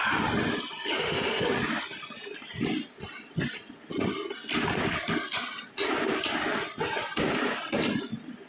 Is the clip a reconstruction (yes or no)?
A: no